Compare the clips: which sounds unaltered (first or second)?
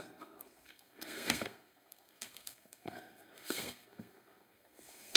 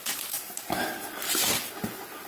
second